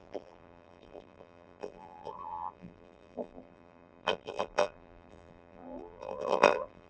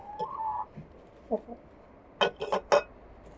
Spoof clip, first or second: first